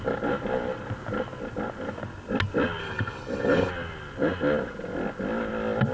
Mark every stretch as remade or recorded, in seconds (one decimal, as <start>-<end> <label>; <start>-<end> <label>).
0.0-2.8 recorded; 2.8-3.7 remade; 3.7-5.9 recorded